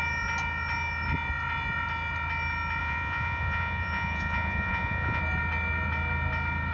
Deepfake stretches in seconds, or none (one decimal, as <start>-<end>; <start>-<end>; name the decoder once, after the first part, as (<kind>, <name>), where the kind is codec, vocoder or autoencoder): 2.8-5.2 (vocoder, Vocos)

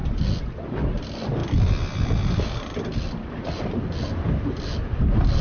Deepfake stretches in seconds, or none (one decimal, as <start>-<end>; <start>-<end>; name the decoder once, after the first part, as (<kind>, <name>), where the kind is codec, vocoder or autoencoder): none